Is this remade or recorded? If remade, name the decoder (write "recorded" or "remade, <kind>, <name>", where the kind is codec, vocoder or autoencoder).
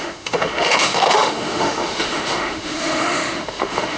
remade, autoencoder, DAC-VAE